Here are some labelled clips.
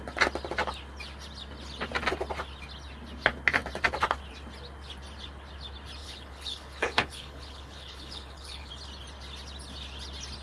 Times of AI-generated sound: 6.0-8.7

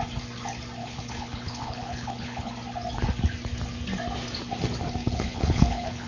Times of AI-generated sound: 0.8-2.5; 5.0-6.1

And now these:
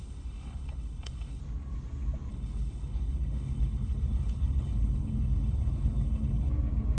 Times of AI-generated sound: 0.0-1.4; 2.3-6.5

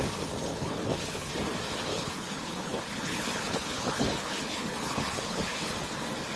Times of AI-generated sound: 0.5-1.3; 1.9-5.7

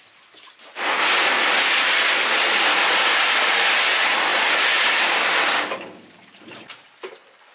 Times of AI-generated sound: none

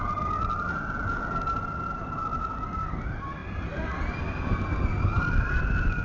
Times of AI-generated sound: none

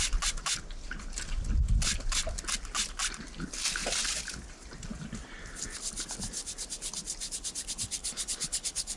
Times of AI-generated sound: 8.0-9.0